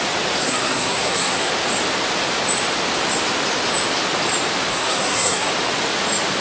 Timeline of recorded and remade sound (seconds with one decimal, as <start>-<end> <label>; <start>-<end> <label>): 0.0-0.4 recorded; 0.4-1.5 remade; 1.5-4.7 recorded; 4.7-5.5 remade; 5.5-6.4 recorded